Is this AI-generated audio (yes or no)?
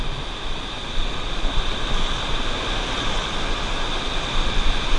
no